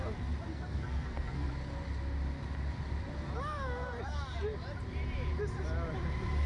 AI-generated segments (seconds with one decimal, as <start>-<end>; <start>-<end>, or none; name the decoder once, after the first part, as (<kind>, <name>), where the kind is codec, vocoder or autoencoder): 0.5-1.5 (codec, SNAC)